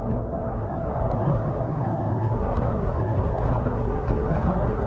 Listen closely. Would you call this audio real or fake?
fake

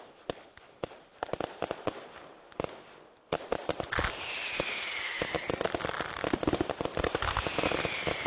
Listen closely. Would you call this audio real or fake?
real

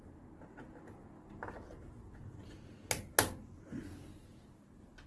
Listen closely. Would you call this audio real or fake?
real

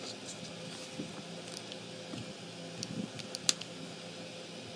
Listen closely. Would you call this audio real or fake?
real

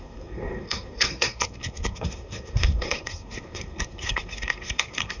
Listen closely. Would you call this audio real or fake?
fake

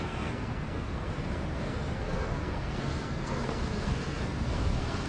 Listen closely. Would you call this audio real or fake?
fake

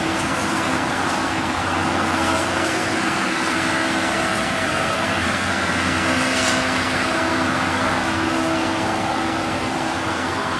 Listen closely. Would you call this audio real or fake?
fake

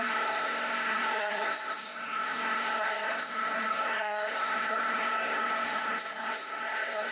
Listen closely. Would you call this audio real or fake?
fake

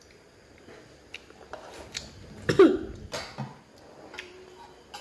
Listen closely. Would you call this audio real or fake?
real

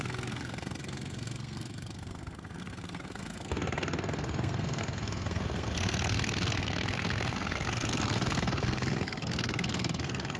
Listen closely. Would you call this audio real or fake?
fake